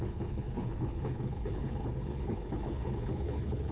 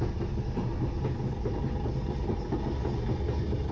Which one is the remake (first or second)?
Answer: first